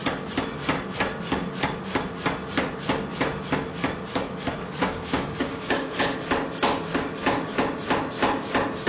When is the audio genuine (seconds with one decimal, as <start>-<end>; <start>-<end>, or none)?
0.0-4.6; 6.0-8.9